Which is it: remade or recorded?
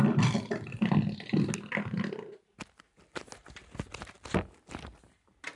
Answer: recorded